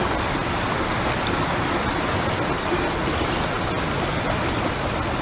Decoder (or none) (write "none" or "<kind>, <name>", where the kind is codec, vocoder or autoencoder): none